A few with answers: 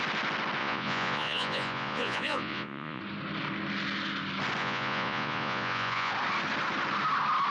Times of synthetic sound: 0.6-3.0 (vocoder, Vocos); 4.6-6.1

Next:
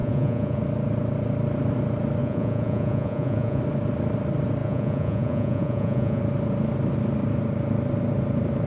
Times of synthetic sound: 0.0-0.6 (vocoder, Vocos); 2.2-3.6; 4.6-6.2